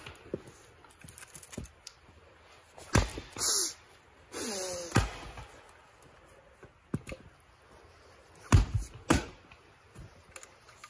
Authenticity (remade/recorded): recorded